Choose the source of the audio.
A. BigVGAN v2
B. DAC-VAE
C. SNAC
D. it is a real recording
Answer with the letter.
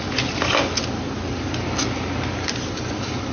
D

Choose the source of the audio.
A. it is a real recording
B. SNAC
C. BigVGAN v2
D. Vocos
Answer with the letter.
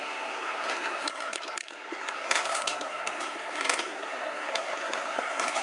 B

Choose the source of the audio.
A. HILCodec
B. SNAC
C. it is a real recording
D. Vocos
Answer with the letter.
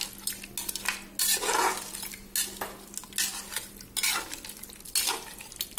C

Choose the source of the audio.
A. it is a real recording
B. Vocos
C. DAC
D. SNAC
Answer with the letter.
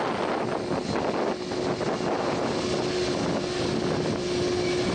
A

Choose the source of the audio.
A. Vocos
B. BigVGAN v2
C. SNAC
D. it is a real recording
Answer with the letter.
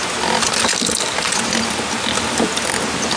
D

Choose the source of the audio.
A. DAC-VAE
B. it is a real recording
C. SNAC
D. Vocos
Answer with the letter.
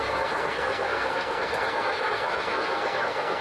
C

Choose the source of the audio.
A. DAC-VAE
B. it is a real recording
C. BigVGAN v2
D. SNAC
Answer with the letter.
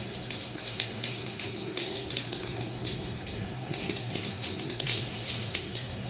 D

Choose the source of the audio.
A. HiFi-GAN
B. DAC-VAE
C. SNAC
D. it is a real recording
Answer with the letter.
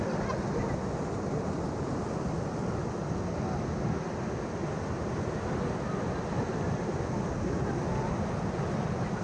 D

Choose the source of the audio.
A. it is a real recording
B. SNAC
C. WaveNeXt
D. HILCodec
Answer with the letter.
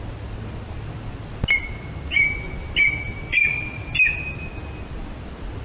A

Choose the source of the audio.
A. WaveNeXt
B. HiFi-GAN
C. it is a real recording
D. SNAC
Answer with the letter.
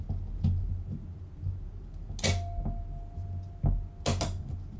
C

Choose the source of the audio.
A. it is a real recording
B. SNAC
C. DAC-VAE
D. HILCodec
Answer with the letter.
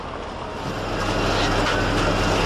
A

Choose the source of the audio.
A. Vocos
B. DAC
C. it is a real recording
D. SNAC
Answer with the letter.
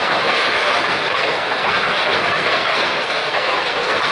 D